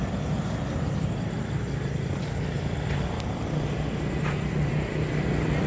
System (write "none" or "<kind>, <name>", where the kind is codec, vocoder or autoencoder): none